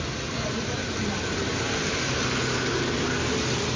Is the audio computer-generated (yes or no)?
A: no